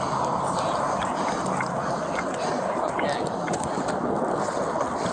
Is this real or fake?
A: real